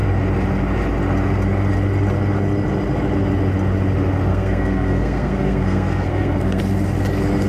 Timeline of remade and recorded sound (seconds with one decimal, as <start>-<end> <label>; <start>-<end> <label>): 0.0-4.3 recorded; 4.3-6.6 remade; 6.6-7.5 recorded